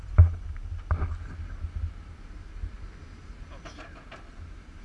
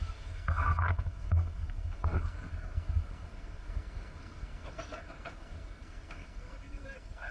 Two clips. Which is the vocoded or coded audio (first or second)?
second